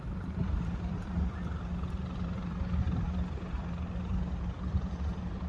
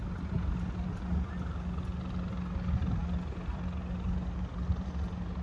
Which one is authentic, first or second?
second